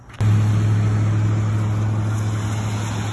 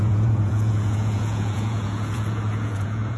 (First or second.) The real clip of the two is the first